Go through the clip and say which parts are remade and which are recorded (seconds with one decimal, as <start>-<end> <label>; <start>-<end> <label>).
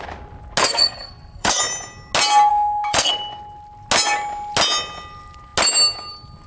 0.0-0.6 recorded; 0.6-1.6 remade; 1.6-2.5 recorded; 2.5-3.1 remade; 3.1-6.5 recorded